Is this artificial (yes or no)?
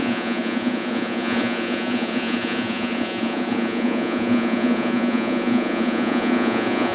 yes